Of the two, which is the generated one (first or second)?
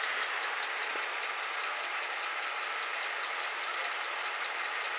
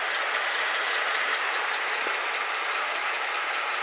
second